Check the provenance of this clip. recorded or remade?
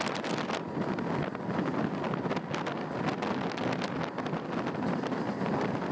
recorded